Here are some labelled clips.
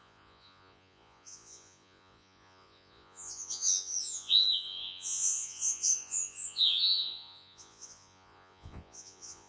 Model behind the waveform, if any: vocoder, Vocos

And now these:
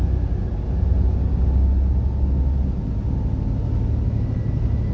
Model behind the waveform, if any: none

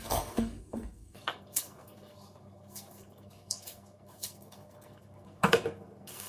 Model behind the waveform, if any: codec, SNAC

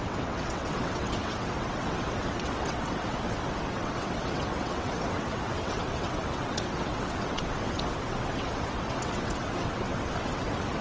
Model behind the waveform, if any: vocoder, WaveNeXt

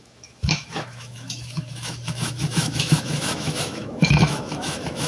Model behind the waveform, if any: autoencoder, DAC-VAE